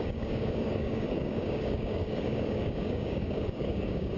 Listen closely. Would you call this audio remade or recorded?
remade